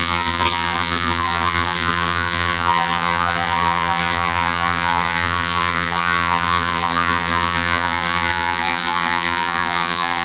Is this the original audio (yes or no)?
no